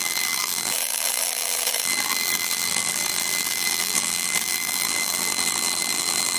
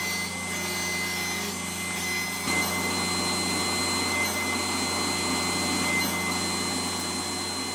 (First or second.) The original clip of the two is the second